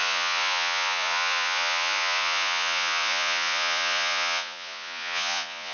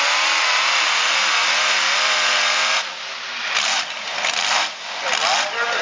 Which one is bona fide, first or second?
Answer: second